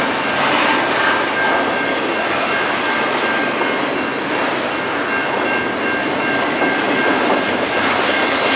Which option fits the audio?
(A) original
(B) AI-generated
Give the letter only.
A